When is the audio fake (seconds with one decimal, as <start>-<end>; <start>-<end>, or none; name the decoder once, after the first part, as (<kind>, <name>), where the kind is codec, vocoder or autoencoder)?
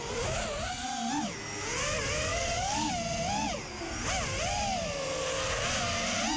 2.3-2.9 (codec, DAC)